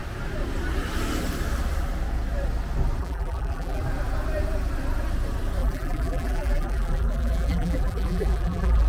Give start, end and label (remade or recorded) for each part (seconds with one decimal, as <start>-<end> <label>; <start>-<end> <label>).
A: 0.0-3.0 recorded; 3.0-3.8 remade; 3.8-5.6 recorded; 5.6-8.9 remade